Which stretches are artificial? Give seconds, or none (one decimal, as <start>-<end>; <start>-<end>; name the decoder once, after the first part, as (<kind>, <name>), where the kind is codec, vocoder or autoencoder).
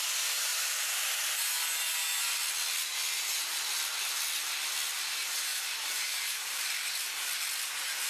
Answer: 0.5-1.1 (vocoder, BigVGAN v2); 5.5-6.7